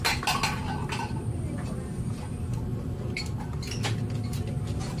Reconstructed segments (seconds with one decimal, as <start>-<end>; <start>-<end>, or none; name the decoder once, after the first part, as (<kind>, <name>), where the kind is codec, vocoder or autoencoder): 2.7-4.4 (vocoder, BigVGAN v2)